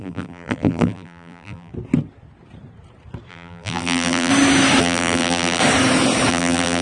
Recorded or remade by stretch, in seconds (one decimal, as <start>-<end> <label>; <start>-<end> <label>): 0.0-1.7 remade; 1.7-3.3 recorded; 3.3-4.3 remade; 4.3-4.8 recorded; 4.8-5.6 remade; 5.6-6.3 recorded; 6.3-6.8 remade